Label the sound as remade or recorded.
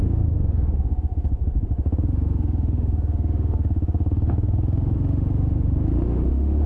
remade